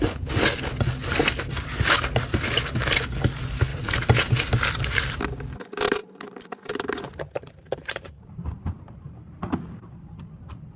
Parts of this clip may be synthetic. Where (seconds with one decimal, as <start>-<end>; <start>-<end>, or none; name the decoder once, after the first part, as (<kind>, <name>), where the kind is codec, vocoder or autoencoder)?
3.7-5.2 (vocoder, BigVGAN v2); 6.0-10.2